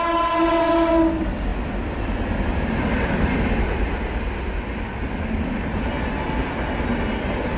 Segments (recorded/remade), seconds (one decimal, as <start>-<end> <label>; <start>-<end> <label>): 0.0-7.6 recorded